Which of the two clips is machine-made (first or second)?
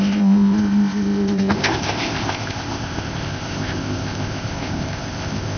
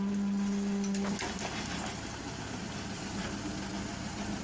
first